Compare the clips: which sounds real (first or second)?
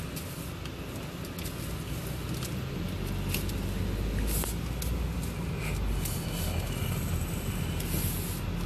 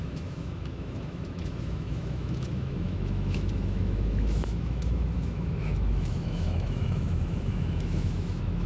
first